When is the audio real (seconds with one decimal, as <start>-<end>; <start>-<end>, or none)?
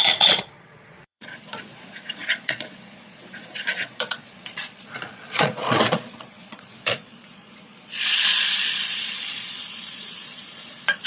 none